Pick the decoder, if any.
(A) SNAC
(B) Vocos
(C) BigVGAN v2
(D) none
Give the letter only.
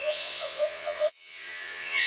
B